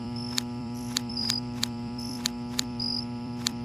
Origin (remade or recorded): remade